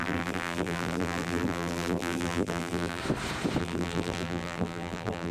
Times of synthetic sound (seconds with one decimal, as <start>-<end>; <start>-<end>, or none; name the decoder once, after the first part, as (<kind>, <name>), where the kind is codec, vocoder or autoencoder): 0.0-3.0 (vocoder, BigVGAN v2); 3.6-5.3